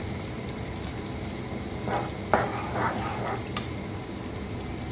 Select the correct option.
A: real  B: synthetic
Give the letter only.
A